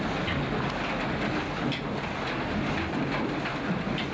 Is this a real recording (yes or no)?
yes